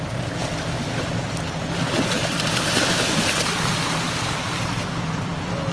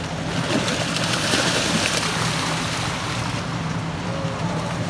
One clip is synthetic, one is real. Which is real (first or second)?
second